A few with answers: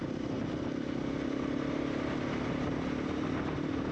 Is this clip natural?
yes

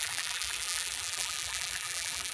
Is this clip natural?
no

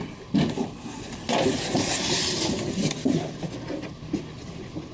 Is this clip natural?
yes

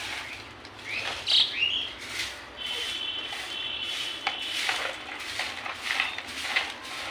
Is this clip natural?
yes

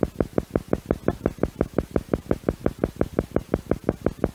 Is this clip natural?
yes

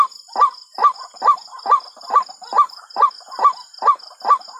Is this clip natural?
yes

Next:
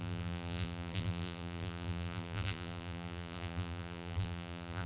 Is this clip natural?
no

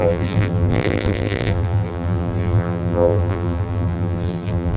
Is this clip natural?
no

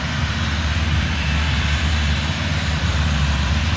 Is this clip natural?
no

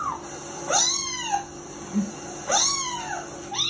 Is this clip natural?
yes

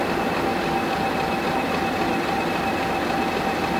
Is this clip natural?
yes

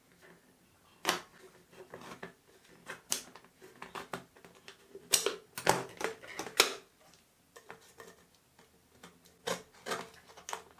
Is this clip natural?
yes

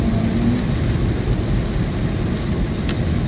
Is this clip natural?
yes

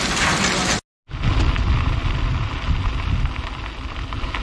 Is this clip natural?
yes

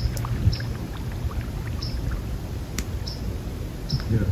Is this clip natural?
yes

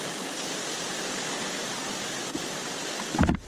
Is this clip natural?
yes